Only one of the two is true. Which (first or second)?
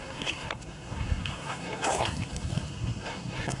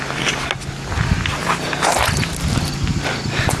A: second